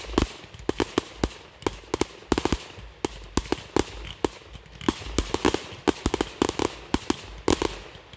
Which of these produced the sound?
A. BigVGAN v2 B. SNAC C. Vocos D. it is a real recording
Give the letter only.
D